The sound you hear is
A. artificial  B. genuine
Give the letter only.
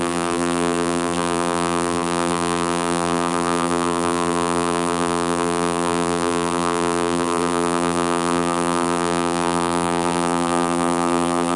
A